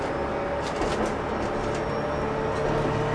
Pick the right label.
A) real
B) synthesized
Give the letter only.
A